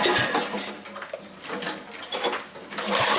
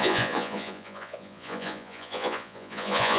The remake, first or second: second